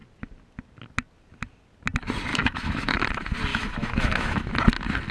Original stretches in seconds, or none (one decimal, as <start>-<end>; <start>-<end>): 0.0-2.3; 3.0-3.5; 4.5-5.1